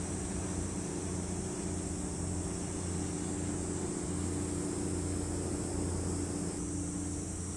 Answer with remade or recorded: recorded